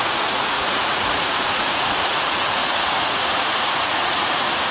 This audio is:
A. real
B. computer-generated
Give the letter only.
B